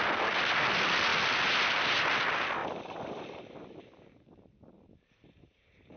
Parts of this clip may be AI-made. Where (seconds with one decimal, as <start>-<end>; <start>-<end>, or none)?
2.6-4.0